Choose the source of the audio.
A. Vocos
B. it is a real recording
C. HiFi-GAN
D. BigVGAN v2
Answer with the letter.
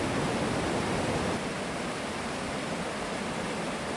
B